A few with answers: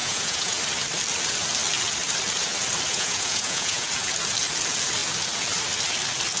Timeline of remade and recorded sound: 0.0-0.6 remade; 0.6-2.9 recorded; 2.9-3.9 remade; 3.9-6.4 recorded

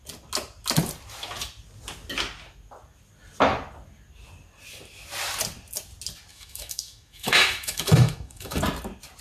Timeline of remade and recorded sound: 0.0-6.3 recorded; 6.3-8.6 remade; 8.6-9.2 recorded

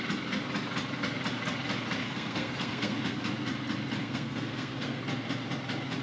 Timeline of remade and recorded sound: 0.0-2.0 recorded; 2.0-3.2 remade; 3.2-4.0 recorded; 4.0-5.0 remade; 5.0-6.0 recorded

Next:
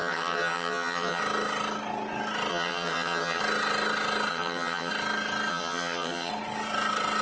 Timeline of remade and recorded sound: 0.0-1.2 remade; 1.2-2.5 recorded; 2.5-3.4 remade; 3.4-4.3 recorded; 4.3-4.9 remade; 4.9-5.5 recorded; 5.5-6.3 remade; 6.3-7.2 recorded

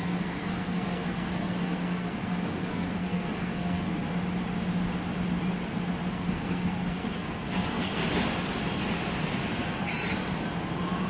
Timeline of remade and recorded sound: 0.0-3.9 remade; 3.9-6.1 recorded; 6.1-8.0 remade; 8.0-11.1 recorded